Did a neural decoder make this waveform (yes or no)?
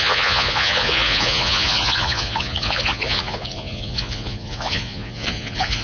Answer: yes